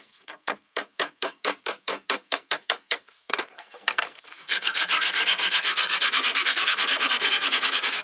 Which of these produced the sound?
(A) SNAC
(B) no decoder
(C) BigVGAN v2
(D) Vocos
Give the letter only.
A